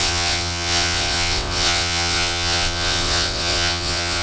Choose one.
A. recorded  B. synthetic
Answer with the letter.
B